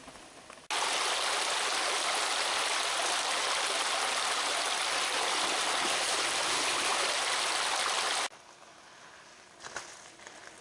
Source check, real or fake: real